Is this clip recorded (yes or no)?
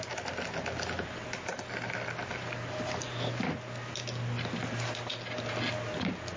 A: yes